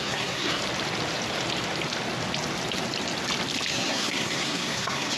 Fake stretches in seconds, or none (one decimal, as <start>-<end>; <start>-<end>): 0.0-0.6; 3.7-5.2